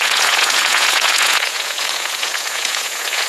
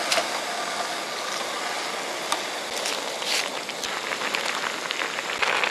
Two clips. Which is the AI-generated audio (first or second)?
first